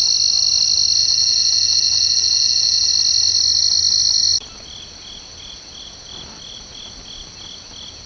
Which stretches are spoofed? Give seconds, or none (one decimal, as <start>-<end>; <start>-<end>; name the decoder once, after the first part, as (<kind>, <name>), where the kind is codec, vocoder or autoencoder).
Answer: 1.0-2.9 (vocoder, Vocos)